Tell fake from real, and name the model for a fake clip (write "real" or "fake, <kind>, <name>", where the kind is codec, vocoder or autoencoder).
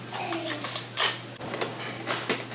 real